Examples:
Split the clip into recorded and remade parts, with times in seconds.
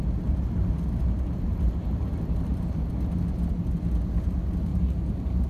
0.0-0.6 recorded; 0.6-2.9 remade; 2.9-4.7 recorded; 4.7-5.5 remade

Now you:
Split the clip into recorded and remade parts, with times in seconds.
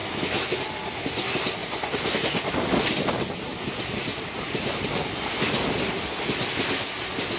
0.0-0.6 remade; 0.6-7.4 recorded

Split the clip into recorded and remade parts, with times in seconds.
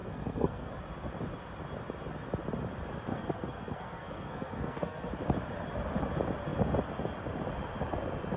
0.0-0.7 remade; 0.7-3.1 recorded; 3.1-5.1 remade; 5.1-8.4 recorded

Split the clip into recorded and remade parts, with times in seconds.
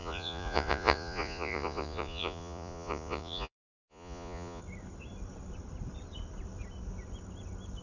0.0-4.6 remade; 4.6-7.8 recorded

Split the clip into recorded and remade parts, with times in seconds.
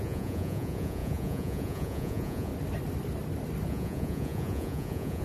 0.0-2.5 remade; 2.5-3.7 recorded; 3.7-5.2 remade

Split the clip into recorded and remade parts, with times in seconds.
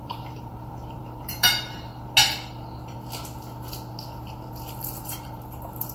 0.0-1.9 remade; 1.9-4.8 recorded; 4.8-5.9 remade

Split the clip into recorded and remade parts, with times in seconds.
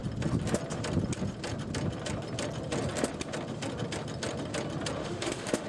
0.0-5.0 recorded; 5.0-5.7 remade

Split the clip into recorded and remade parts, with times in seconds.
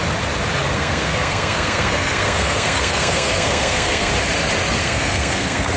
0.0-0.6 recorded; 0.6-4.1 remade; 4.1-4.8 recorded; 4.8-5.8 remade